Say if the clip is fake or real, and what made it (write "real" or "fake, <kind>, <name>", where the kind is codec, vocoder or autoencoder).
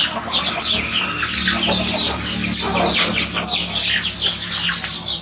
real